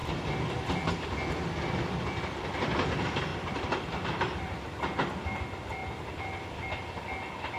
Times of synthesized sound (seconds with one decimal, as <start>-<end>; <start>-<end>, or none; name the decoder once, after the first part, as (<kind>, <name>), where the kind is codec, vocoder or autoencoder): 3.3-4.6 (vocoder, BigVGAN v2); 5.8-6.6